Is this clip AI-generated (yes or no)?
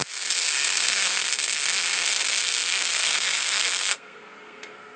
yes